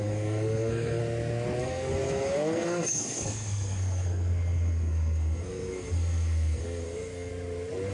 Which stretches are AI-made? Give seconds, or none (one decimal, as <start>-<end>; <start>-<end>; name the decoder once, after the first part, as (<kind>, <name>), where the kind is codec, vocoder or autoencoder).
0.0-1.0 (codec, SNAC); 1.6-7.3